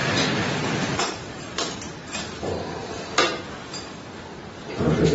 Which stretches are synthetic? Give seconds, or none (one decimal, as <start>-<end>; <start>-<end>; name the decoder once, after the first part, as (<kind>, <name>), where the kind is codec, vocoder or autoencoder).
0.0-0.5 (vocoder, BigVGAN v2); 0.9-3.3; 4.3-5.1